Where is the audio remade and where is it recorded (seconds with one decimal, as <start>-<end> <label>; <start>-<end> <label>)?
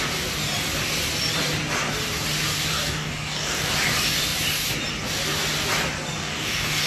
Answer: 0.0-2.7 recorded; 2.7-3.7 remade; 3.7-6.2 recorded; 6.2-6.9 remade